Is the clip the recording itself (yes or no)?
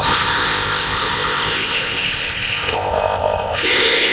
no